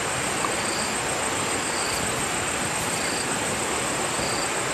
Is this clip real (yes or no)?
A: yes